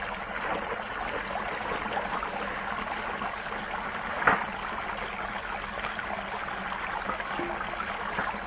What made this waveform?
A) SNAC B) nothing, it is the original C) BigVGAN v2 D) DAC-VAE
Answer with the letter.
B